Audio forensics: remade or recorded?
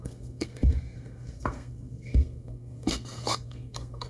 remade